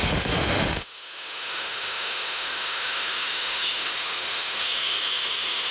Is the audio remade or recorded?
remade